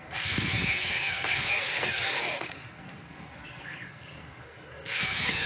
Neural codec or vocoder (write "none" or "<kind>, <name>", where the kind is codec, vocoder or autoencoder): codec, SNAC